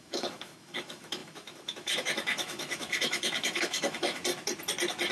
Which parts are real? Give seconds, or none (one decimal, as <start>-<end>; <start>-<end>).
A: 4.2-5.1